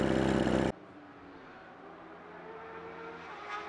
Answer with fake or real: real